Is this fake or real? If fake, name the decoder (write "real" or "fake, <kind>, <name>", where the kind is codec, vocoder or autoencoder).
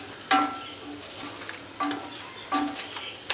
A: real